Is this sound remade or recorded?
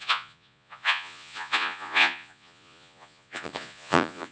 remade